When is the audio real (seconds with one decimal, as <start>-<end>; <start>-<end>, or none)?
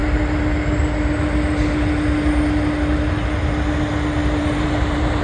0.0-4.2